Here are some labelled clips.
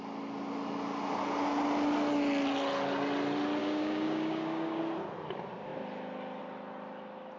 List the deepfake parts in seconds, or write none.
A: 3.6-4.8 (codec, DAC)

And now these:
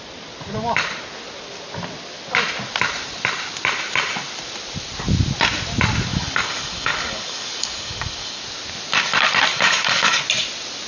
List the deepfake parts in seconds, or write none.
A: 6.1-8.4 (codec, DAC); 9.5-10.2

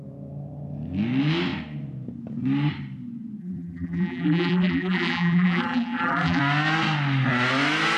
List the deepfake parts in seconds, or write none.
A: 3.4-6.4 (vocoder, BigVGAN v2)

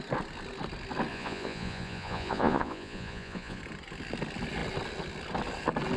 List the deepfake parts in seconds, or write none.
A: 1.1-3.6 (vocoder, Vocos)

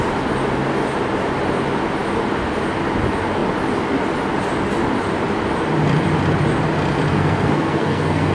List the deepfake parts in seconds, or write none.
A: 7.1-8.3 (codec, SNAC)

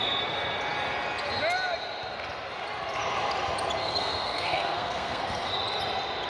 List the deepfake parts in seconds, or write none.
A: 3.8-5.5 (codec, SNAC)